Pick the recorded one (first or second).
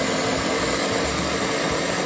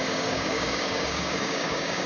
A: first